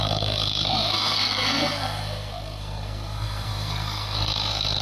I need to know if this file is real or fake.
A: fake